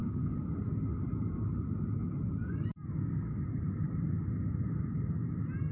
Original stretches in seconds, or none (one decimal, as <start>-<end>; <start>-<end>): 0.5-2.4; 3.4-5.7